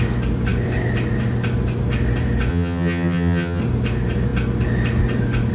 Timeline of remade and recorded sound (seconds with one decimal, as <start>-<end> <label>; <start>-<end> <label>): 0.0-2.5 recorded; 2.5-3.6 remade; 3.6-5.5 recorded